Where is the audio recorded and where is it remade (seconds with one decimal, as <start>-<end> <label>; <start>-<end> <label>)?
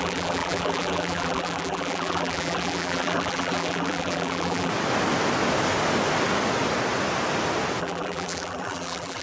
0.0-4.7 remade; 4.7-7.8 recorded; 7.8-9.2 remade